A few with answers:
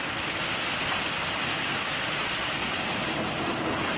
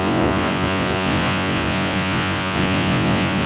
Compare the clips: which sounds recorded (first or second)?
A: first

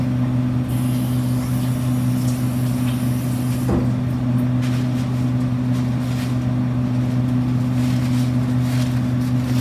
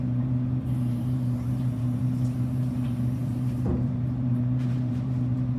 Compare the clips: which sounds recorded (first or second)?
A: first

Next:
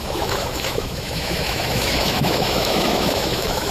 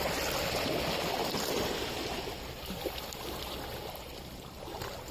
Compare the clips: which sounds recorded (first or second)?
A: second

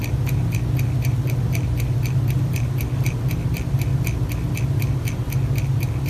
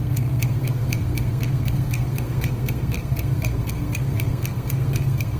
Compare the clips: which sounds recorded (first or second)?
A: first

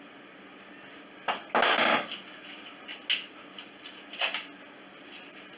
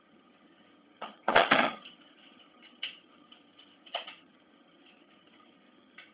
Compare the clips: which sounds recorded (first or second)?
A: first